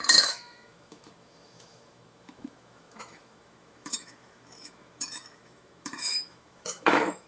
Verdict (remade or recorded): remade